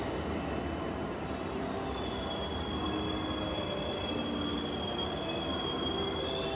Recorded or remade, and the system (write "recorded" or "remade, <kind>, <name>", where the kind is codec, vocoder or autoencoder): recorded